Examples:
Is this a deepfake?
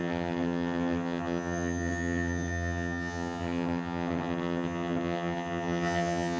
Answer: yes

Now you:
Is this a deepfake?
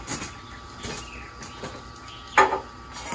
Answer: no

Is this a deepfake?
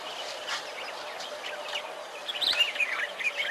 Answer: no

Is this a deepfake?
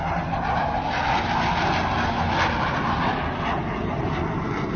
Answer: no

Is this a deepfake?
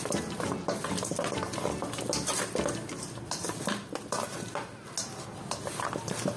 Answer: no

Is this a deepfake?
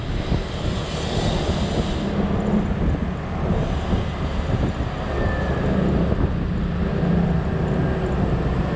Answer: no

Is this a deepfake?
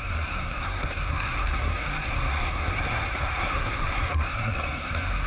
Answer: yes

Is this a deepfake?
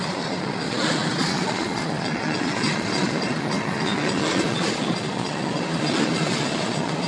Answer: yes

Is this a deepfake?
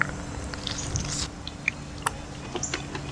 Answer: no